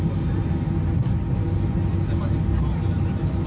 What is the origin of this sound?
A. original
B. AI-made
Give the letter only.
A